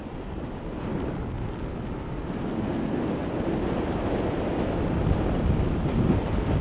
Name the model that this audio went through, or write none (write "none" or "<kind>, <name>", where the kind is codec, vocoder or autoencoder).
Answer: none